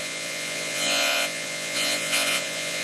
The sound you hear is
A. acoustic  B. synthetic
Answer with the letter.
B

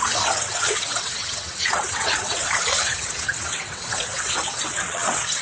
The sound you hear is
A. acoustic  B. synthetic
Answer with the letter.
B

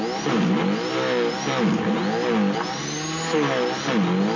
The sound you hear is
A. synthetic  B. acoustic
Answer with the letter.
B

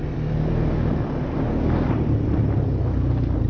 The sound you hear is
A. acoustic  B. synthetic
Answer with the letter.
A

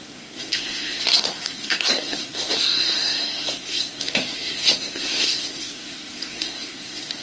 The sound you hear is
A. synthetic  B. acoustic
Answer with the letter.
A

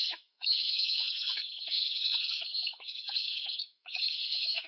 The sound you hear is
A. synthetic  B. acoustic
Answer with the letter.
A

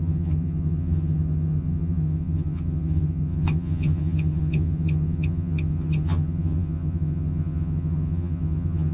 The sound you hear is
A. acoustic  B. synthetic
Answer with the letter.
B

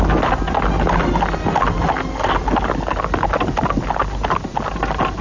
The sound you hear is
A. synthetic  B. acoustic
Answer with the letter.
B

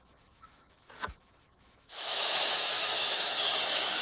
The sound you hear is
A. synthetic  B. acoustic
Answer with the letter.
A